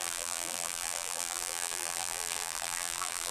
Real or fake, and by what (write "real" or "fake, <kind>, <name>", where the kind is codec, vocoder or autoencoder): fake, vocoder, BigVGAN v2